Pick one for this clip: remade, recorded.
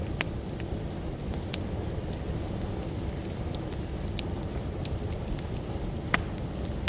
recorded